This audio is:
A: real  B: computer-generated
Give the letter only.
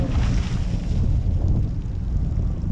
A